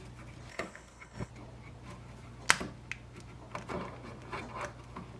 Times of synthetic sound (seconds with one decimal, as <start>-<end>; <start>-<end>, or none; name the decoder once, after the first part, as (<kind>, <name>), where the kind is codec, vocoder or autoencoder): 0.5-1.3 (codec, HILCodec)